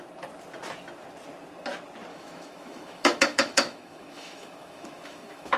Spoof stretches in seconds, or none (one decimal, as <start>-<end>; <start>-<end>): 2.1-5.6